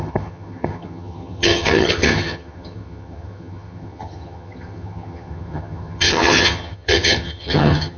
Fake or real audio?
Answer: fake